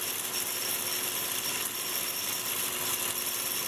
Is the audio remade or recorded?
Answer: recorded